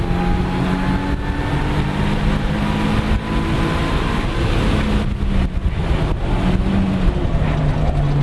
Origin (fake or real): real